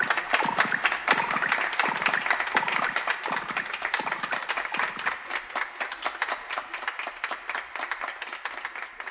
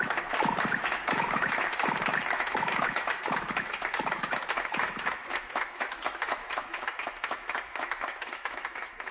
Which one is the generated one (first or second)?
second